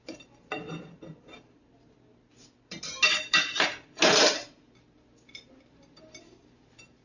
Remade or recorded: recorded